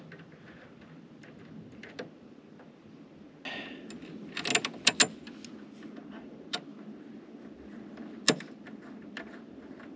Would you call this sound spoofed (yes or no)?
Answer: no